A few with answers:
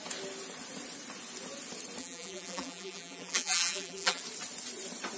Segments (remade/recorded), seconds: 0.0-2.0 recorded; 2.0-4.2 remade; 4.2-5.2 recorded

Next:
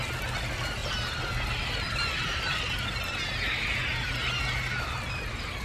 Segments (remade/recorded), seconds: 0.0-0.8 recorded; 0.8-2.6 remade; 2.6-5.6 recorded

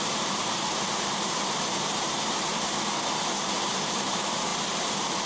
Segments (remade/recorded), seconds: 0.0-2.5 remade; 2.5-3.4 recorded; 3.4-5.3 remade

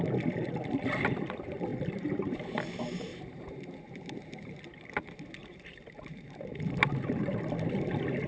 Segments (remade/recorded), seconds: 0.0-1.7 recorded; 1.7-2.4 remade; 2.4-3.1 recorded; 3.1-4.5 remade; 4.5-5.4 recorded; 5.4-6.5 remade; 6.5-8.3 recorded

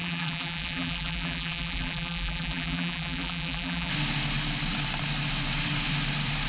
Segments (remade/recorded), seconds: 0.0-3.9 remade; 3.9-6.5 recorded

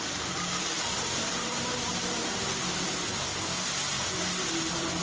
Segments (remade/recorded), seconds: 0.0-2.2 remade; 2.2-2.8 recorded; 2.8-3.3 remade; 3.3-4.5 recorded; 4.5-5.0 remade

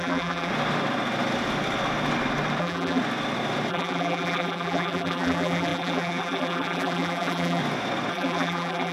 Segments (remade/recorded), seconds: 0.0-0.5 remade; 0.5-2.6 recorded; 2.6-3.0 remade; 3.0-3.7 recorded; 3.7-7.6 remade; 7.6-8.1 recorded; 8.1-8.9 remade